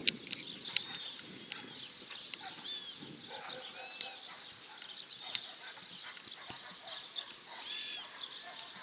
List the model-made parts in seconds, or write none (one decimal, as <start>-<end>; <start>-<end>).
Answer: none